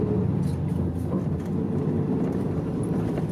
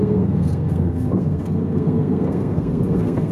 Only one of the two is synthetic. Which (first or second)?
second